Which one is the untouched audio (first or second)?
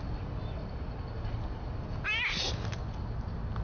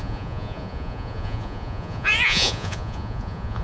first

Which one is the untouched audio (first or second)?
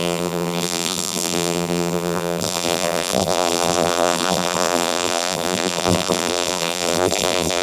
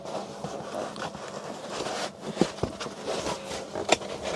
second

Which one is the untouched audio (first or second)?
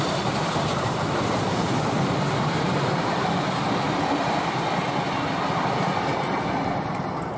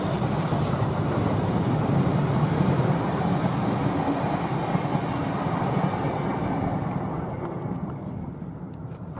second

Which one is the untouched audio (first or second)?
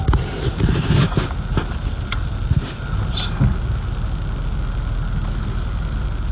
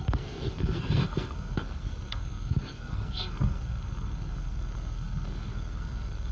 first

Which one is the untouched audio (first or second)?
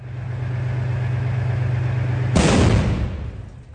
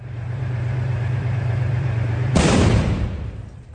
first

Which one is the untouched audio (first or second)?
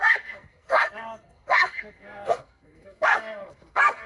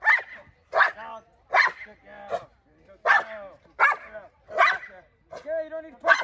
second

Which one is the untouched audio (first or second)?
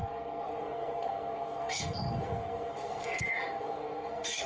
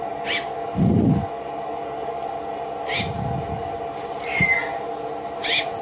second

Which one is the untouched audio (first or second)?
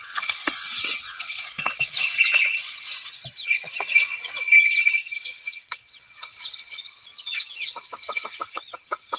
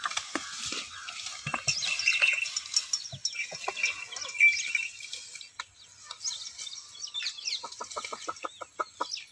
second